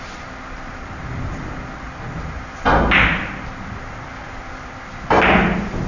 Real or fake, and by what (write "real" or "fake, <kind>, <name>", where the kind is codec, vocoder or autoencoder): real